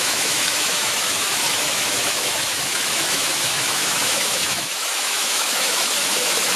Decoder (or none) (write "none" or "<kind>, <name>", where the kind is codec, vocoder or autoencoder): autoencoder, DAC-VAE